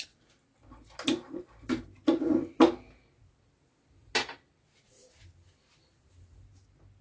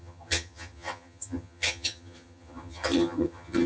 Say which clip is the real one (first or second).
first